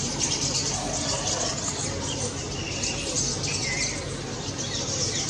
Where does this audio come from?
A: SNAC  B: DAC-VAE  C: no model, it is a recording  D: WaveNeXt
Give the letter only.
C